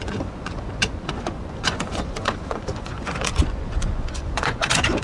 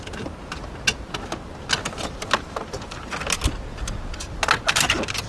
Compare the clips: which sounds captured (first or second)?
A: second